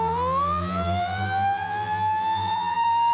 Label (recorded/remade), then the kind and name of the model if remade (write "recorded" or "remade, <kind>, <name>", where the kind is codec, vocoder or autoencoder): remade, vocoder, BigVGAN v2